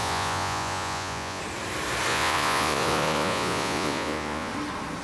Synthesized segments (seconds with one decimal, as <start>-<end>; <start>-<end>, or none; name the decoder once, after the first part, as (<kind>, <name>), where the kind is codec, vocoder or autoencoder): 0.0-1.4 (vocoder, Vocos); 2.1-4.5